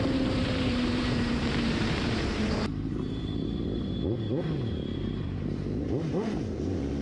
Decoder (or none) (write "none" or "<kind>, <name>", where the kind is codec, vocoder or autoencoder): vocoder, BigVGAN v2